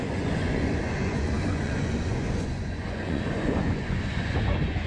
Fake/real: fake